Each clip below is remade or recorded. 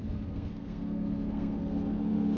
remade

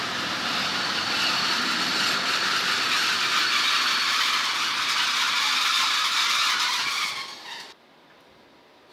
recorded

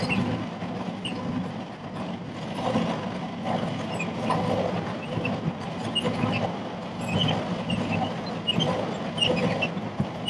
recorded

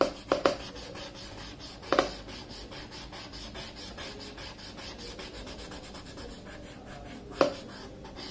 recorded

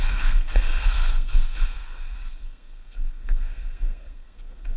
remade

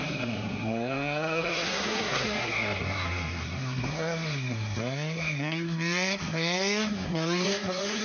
remade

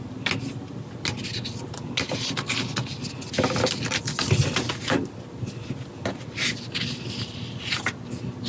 recorded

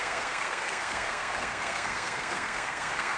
remade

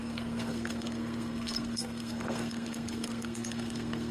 remade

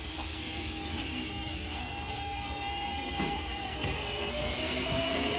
remade